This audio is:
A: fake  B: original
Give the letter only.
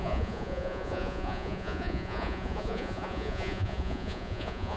A